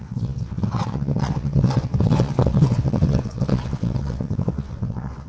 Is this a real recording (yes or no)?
no